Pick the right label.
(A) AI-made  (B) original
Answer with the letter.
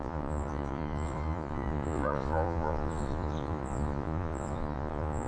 A